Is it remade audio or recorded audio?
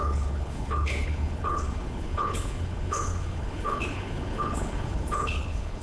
remade